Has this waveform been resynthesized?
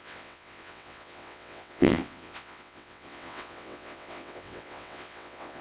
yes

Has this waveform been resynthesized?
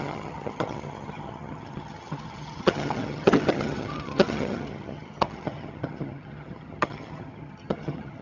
yes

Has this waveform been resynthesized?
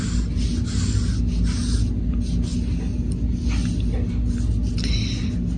no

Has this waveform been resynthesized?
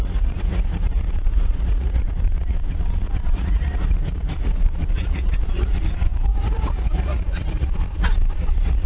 yes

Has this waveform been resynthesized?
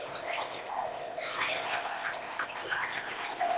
yes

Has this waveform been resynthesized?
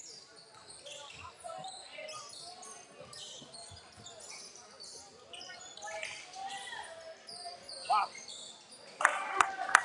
no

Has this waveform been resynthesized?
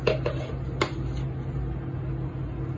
no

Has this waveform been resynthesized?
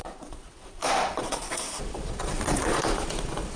yes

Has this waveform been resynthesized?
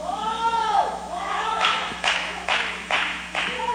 yes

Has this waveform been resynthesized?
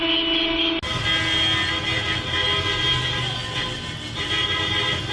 no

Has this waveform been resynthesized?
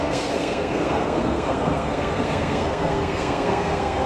yes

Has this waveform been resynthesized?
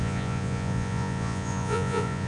yes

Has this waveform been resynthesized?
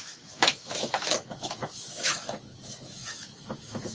yes